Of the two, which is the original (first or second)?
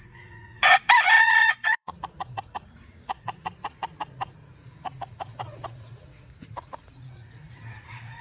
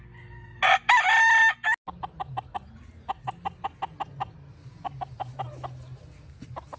second